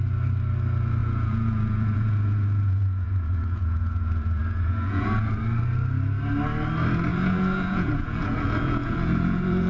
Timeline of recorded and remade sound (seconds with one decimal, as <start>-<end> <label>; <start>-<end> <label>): 0.0-1.0 recorded; 1.0-5.4 remade; 5.4-7.1 recorded; 7.1-9.7 remade